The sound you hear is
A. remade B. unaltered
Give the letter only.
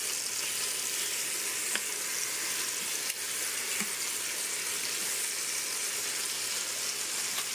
B